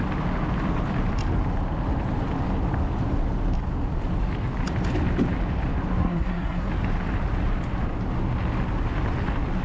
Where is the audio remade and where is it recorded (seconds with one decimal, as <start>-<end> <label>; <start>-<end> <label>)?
0.0-6.0 recorded; 6.0-6.7 remade; 6.7-9.6 recorded